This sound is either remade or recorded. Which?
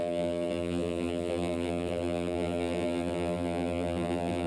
remade